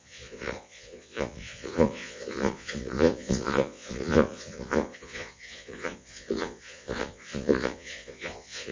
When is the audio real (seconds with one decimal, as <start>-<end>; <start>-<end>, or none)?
none